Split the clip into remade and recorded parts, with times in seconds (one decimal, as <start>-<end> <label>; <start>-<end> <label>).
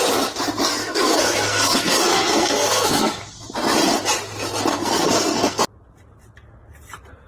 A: 0.0-0.8 recorded; 0.8-3.2 remade; 3.2-4.7 recorded; 4.7-5.6 remade; 5.6-7.3 recorded